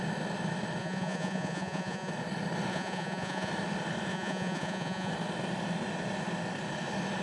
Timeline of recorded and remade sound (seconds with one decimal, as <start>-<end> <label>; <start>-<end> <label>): 0.0-0.8 recorded; 0.8-2.1 remade; 2.1-2.7 recorded; 2.7-3.5 remade; 3.5-4.1 recorded; 4.1-5.1 remade; 5.1-7.2 recorded